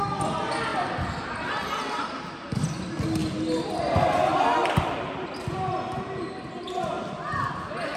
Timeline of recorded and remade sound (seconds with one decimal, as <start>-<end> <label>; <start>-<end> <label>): 0.0-8.0 recorded